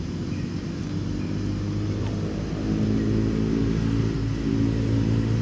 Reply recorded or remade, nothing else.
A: recorded